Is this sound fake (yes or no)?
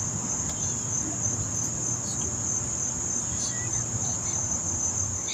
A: no